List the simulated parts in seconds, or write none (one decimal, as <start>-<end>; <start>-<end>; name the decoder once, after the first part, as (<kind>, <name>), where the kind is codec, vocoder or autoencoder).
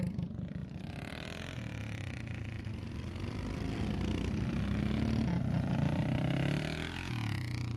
0.6-1.1 (vocoder, BigVGAN v2); 1.8-2.6